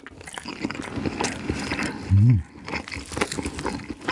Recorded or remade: recorded